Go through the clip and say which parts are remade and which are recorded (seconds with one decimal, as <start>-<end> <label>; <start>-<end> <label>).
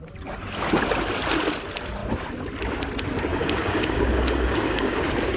0.0-3.3 recorded; 3.3-5.0 remade; 5.0-5.4 recorded